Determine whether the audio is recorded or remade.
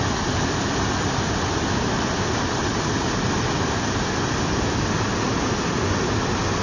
recorded